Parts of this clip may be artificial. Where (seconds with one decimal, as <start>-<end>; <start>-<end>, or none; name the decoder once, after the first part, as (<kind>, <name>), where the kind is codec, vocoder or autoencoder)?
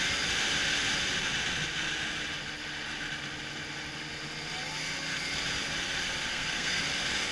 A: 6.3-6.8 (codec, SNAC)